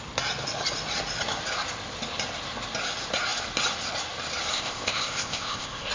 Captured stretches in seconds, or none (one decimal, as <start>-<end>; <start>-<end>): 0.0-4.5